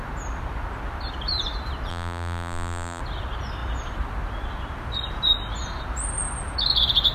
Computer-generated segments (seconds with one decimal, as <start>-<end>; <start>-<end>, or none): 1.9-3.0